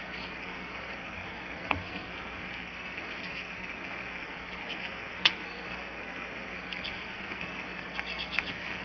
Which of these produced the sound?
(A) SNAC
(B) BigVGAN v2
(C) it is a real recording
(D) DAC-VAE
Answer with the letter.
A